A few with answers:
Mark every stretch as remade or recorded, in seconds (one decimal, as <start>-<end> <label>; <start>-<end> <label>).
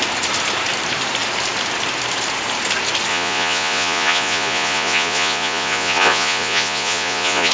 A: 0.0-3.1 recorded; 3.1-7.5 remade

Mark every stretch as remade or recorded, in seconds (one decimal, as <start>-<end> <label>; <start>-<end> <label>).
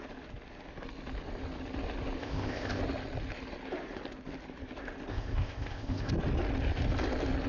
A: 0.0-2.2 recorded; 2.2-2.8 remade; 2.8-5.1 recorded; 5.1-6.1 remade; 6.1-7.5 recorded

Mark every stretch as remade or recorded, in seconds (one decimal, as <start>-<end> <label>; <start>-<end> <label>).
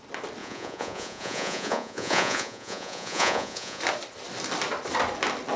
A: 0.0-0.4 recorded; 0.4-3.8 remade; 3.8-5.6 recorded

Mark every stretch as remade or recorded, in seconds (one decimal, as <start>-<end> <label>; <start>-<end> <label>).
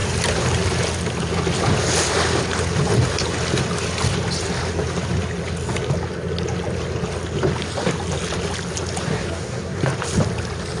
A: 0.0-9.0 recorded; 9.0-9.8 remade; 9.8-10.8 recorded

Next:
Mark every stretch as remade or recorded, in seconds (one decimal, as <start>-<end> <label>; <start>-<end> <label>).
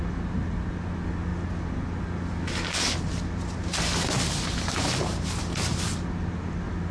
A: 0.0-6.9 recorded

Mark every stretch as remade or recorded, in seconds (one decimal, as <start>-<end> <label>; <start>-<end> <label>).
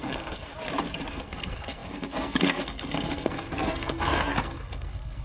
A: 0.0-0.5 remade; 0.5-1.1 recorded; 1.1-5.2 remade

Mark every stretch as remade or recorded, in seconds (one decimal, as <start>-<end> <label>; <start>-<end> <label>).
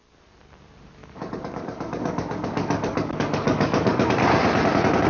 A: 0.0-1.0 recorded; 1.0-4.1 remade; 4.1-5.1 recorded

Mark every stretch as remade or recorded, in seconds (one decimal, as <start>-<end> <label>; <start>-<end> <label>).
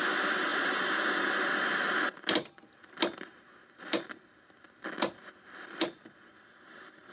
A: 0.0-7.1 recorded